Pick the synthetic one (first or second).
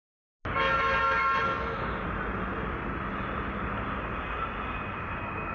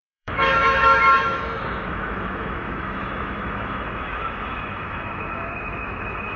second